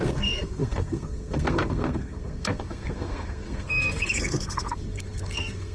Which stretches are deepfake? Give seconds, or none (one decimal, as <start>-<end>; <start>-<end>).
0.0-5.7

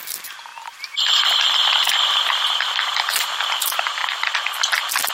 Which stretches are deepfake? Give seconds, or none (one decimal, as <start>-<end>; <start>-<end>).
none

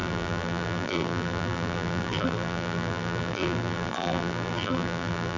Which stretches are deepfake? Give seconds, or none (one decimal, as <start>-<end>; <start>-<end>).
0.0-5.4

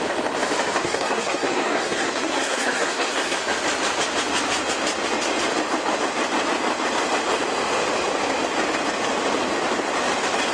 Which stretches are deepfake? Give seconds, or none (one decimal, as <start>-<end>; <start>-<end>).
0.8-3.4

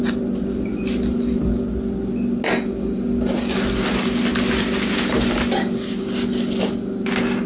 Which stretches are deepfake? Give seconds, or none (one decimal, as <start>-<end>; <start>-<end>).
none